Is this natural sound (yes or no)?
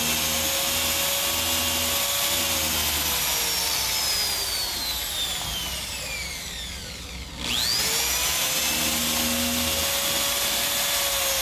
yes